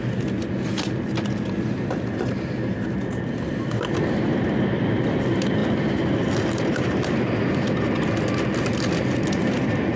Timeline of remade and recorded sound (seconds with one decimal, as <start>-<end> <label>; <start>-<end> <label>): 0.0-10.0 recorded